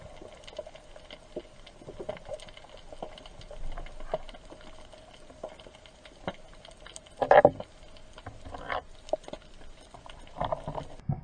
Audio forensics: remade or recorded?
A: recorded